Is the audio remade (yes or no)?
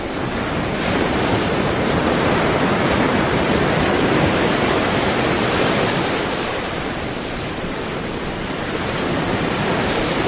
yes